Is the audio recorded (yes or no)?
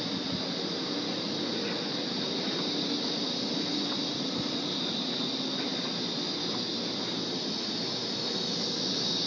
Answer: yes